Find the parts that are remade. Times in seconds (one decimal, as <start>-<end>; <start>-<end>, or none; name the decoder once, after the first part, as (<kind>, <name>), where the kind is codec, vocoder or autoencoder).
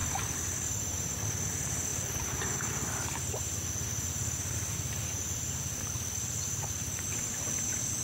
none